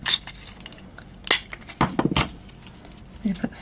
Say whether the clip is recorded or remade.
recorded